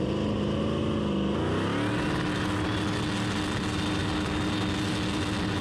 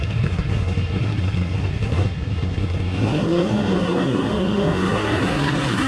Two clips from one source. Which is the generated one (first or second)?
second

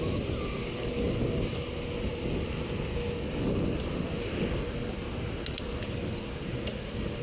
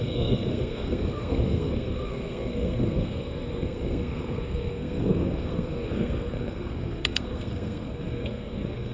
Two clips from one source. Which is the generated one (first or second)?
second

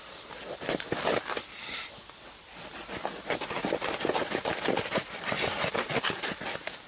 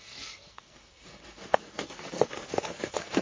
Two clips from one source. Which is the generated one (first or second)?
second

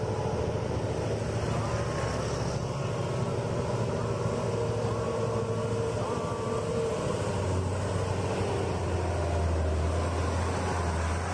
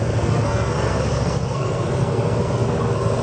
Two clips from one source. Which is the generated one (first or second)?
second